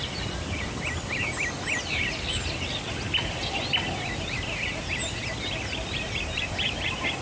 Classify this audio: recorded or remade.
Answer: remade